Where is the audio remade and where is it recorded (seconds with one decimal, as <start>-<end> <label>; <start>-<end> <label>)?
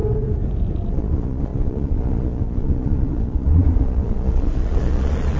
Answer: 0.0-0.9 recorded; 0.9-5.4 remade